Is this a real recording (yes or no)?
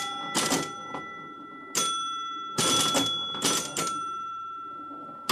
yes